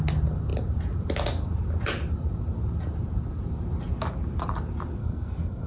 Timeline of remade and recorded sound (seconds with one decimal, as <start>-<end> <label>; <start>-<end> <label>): 0.0-5.0 recorded; 5.0-5.7 remade